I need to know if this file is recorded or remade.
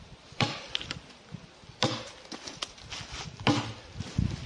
recorded